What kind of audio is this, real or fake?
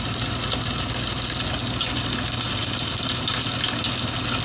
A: real